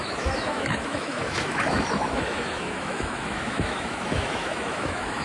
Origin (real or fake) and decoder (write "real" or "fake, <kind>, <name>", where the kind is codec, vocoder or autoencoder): fake, autoencoder, DAC-VAE